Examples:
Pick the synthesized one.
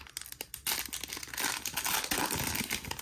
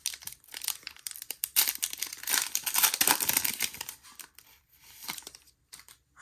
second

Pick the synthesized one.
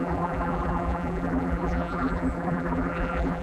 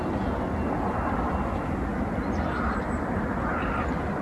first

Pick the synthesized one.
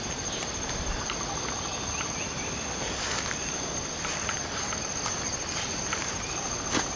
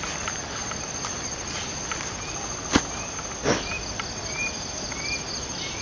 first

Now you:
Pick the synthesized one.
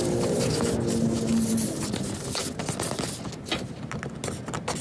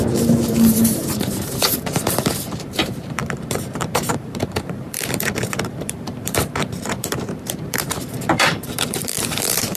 second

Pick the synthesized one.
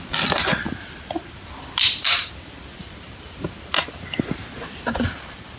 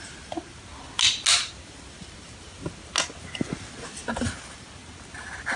first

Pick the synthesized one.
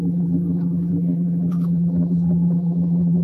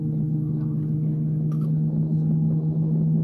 first